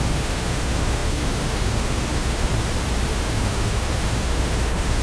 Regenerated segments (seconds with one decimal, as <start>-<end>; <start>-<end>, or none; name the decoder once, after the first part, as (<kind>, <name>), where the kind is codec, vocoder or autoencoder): 0.0-2.5 (autoencoder, DAC-VAE); 3.1-5.0